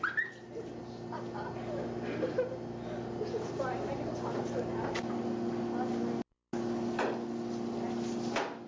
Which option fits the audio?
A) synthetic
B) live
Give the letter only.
B